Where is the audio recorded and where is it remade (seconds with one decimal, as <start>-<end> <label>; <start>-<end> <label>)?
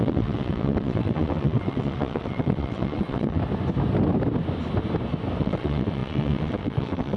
0.0-3.4 remade; 3.4-5.4 recorded; 5.4-7.2 remade